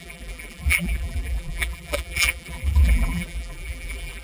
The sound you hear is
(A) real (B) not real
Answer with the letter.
B